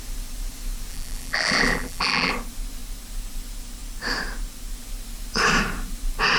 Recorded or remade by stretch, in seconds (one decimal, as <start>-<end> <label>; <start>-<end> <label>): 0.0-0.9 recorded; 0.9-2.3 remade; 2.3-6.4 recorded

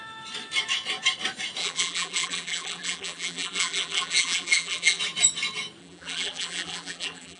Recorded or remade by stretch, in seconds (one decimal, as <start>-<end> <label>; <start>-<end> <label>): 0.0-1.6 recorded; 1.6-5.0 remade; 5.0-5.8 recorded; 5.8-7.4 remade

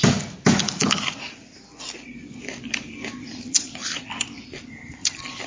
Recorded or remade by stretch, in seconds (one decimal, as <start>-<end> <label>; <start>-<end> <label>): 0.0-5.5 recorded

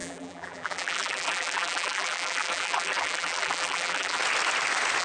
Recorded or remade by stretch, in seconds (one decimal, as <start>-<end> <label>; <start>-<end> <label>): 0.0-4.2 remade; 4.2-5.0 recorded

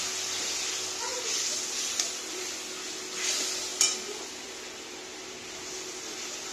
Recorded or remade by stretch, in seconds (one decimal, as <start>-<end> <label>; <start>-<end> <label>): 0.0-6.5 recorded

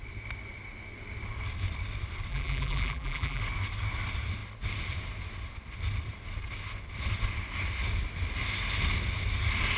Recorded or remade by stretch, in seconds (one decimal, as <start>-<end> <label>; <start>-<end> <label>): 0.0-2.3 recorded; 2.3-3.4 remade; 3.4-9.8 recorded